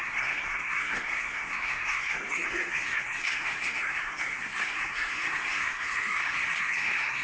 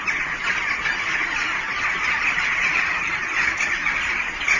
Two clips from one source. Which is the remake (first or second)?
first